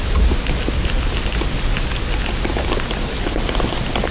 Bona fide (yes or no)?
yes